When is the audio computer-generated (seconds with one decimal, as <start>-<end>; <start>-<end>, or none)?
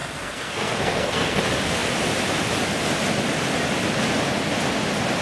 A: 0.0-1.4